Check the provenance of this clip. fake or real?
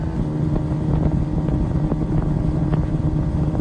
real